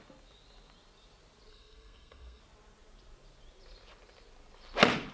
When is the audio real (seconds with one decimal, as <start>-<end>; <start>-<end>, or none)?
0.0-1.5; 2.4-5.1